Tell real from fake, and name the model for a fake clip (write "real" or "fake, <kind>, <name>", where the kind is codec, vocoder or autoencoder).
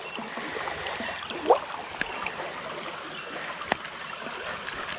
real